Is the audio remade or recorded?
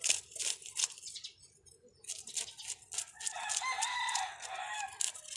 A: recorded